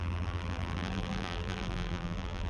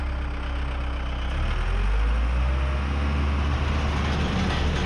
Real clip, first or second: second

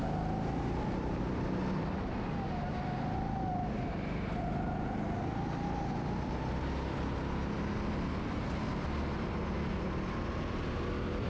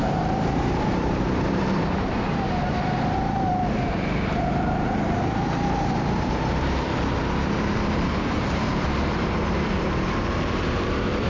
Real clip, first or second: first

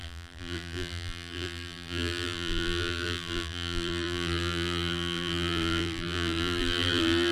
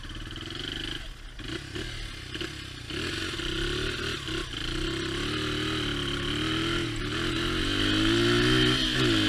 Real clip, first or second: second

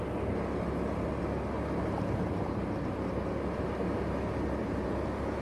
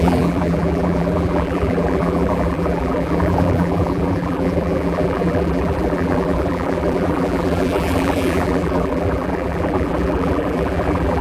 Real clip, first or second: first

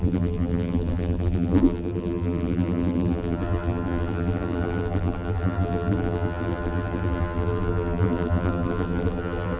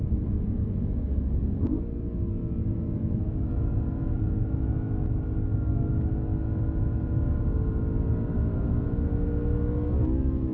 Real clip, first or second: second